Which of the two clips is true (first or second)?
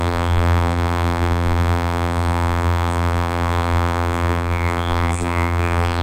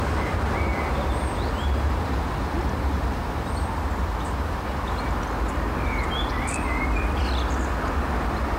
second